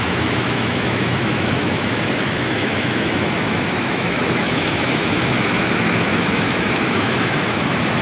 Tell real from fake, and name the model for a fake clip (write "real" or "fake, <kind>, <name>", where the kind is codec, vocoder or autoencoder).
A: fake, autoencoder, DAC-VAE